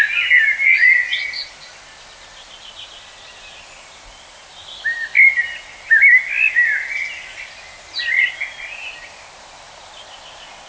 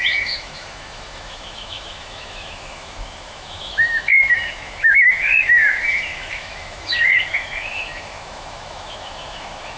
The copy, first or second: second